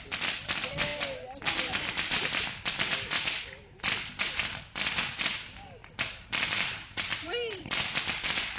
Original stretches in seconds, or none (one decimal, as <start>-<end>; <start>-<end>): 0.0-5.8; 7.8-8.6